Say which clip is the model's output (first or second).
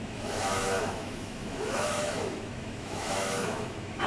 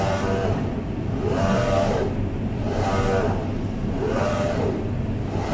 first